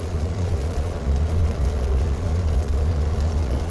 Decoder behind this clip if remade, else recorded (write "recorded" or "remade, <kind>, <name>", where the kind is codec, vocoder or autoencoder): remade, vocoder, Vocos